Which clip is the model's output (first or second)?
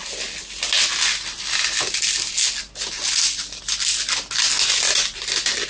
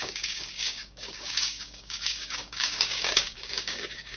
second